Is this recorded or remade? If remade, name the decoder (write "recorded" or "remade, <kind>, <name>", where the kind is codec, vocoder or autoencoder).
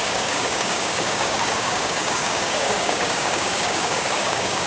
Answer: remade, codec, DAC